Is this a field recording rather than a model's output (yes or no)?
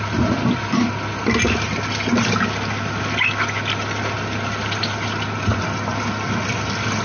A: yes